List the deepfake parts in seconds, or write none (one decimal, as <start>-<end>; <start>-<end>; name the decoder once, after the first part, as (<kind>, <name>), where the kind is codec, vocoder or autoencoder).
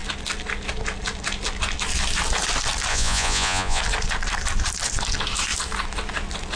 2.9-3.8 (vocoder, Vocos)